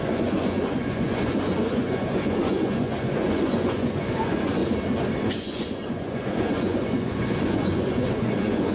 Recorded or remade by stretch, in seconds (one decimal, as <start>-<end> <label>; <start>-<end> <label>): 0.0-4.6 remade; 4.6-5.2 recorded; 5.2-8.7 remade